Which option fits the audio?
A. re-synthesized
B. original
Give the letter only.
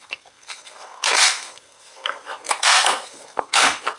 A